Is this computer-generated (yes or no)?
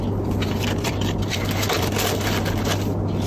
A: no